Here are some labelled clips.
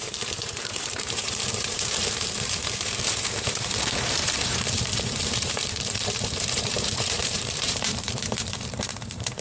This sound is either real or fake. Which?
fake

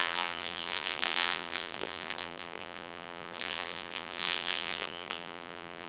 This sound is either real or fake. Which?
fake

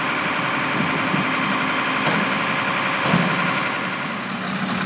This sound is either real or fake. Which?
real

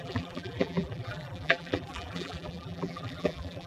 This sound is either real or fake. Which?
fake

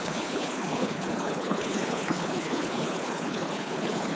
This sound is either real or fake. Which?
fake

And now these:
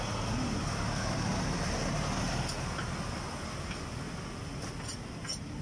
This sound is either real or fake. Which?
real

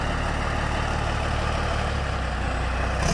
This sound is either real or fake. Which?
real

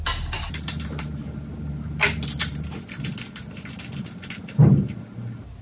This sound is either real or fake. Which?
real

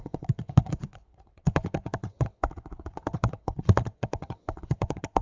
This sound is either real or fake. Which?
fake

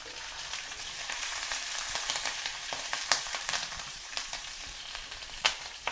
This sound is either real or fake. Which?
fake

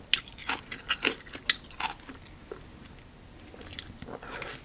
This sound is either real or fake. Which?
real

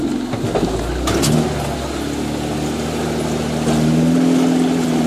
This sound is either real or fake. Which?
real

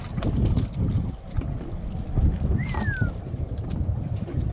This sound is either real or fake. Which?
real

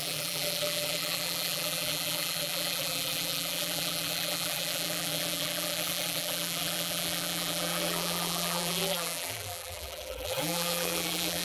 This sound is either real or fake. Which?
fake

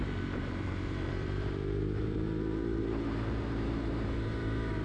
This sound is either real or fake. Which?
fake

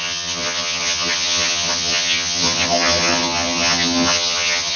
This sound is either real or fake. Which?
fake